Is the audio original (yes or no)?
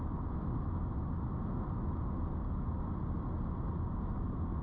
yes